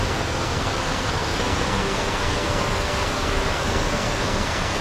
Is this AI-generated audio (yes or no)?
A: yes